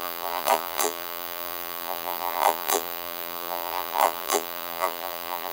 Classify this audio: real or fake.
fake